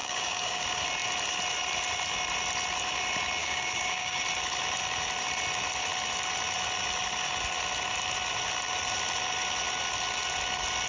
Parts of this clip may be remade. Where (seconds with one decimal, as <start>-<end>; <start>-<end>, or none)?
0.0-0.6; 3.4-4.2